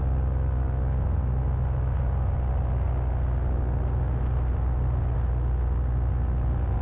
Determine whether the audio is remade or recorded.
recorded